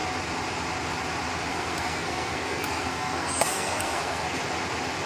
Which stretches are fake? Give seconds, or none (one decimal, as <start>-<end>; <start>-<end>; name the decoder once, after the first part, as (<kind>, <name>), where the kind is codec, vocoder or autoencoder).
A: 1.5-4.4 (codec, SNAC)